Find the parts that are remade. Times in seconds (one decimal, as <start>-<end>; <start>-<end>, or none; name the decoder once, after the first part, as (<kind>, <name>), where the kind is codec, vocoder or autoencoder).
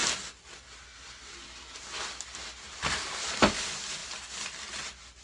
none